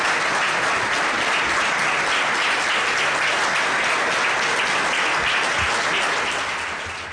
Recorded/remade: recorded